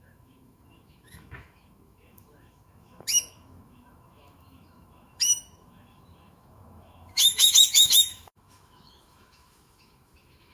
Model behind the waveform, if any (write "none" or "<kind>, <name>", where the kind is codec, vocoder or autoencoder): autoencoder, DAC-VAE